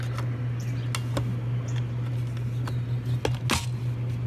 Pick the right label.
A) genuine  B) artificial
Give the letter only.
A